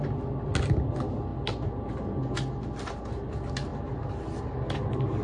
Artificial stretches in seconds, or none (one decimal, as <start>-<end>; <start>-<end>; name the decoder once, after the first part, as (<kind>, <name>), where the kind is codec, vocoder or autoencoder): none